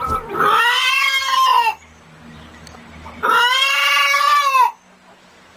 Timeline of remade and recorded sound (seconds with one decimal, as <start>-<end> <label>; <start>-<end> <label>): 0.0-5.6 recorded